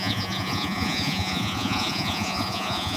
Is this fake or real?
fake